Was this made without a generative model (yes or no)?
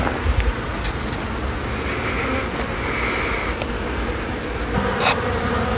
yes